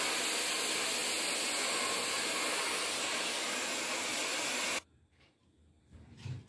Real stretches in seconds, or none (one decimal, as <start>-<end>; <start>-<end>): 0.0-6.5